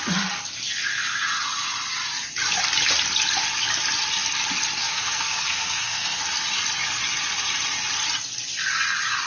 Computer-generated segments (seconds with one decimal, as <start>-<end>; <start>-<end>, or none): 4.8-6.2